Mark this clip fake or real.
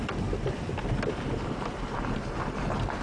real